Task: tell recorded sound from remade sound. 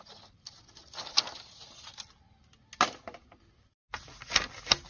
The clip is recorded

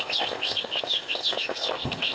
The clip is remade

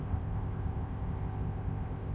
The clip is remade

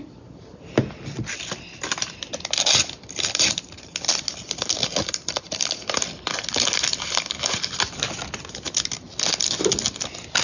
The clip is recorded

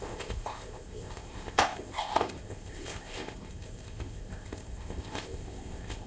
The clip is remade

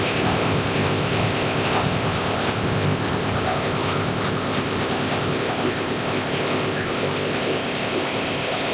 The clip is remade